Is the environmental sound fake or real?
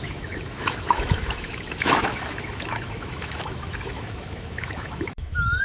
fake